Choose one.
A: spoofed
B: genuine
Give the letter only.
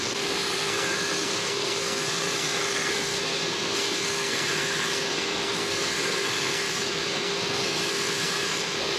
A